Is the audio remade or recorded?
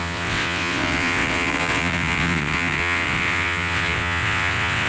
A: remade